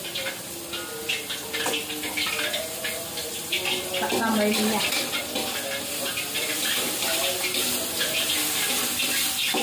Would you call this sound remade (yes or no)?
no